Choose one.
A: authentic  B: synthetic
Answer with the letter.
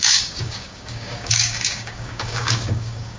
B